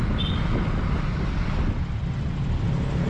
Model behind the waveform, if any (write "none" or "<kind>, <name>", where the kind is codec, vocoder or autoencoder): none